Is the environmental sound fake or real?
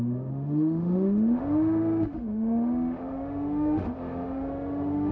fake